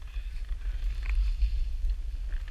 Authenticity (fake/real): real